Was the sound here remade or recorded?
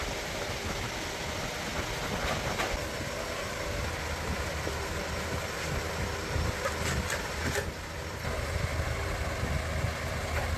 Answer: recorded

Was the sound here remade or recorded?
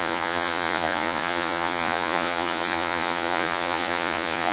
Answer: remade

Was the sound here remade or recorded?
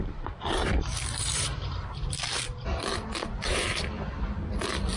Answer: remade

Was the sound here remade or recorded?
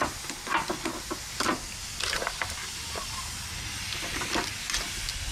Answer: recorded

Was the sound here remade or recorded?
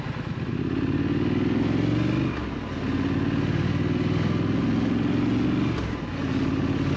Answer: recorded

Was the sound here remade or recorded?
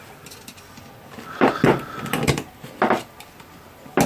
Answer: recorded